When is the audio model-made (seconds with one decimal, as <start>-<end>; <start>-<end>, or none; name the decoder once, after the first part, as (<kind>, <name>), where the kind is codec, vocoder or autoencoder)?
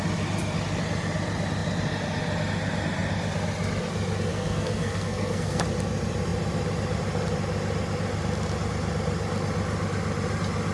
4.3-5.6 (codec, SNAC)